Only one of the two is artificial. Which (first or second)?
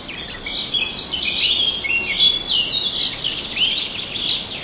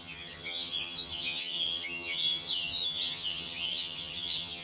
second